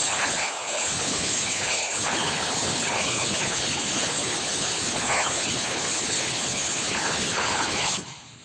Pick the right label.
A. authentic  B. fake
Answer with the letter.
B